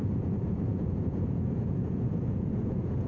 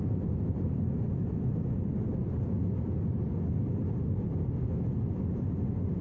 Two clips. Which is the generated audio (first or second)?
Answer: first